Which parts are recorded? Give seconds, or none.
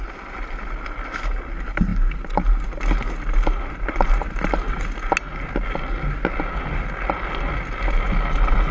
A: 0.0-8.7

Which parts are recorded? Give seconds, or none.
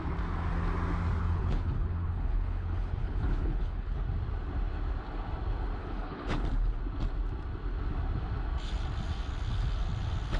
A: 0.0-1.2; 4.0-5.8; 6.8-10.4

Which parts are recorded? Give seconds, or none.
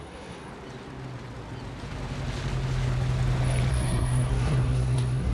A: 0.5-3.7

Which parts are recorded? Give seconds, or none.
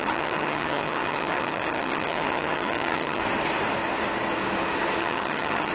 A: 3.2-5.0